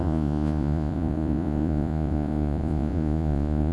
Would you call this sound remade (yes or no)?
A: yes